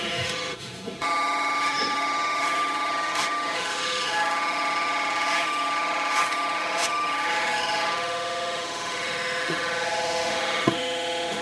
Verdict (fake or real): fake